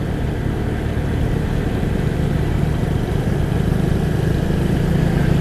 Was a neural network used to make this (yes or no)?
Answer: yes